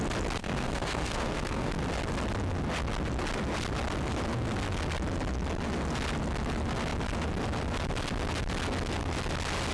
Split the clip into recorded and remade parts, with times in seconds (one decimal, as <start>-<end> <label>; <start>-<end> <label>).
0.0-0.4 recorded; 0.4-1.7 remade; 1.7-9.7 recorded